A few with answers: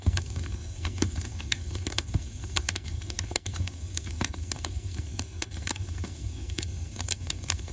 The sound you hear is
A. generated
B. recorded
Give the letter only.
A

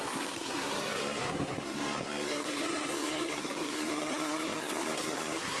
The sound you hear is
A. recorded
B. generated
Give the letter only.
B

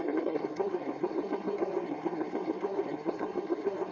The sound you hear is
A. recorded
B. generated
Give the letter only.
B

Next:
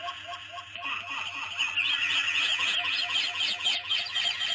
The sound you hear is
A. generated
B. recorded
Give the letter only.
B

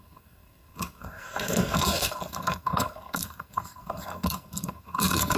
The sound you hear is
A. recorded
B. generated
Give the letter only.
B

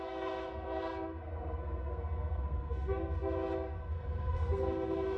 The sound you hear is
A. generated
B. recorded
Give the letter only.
A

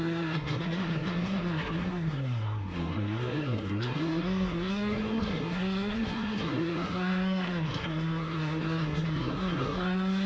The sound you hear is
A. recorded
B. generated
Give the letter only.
B